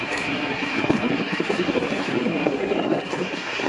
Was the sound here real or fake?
fake